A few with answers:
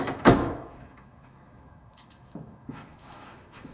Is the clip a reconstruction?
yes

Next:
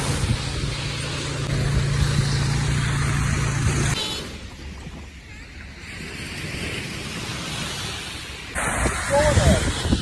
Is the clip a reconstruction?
no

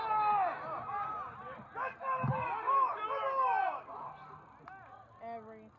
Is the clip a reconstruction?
no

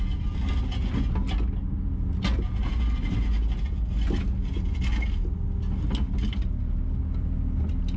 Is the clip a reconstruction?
no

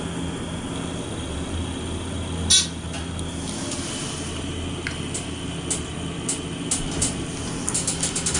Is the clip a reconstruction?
no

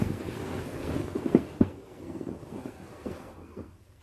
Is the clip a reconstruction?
yes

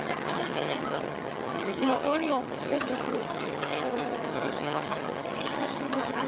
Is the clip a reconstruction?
yes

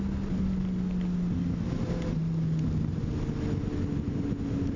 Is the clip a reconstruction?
no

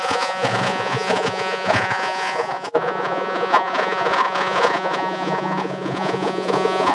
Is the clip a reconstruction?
yes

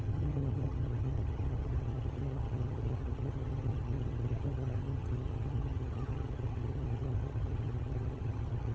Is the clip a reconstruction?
yes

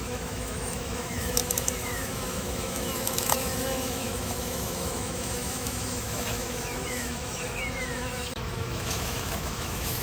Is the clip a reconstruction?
yes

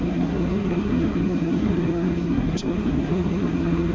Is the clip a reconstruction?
yes